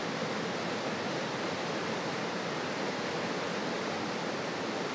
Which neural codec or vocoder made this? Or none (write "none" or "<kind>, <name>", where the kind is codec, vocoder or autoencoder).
none